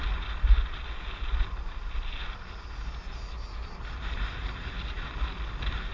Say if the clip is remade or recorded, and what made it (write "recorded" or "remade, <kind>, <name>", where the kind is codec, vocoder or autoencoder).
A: recorded